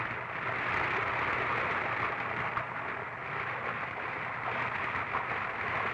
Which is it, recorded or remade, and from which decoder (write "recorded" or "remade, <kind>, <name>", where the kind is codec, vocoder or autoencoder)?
recorded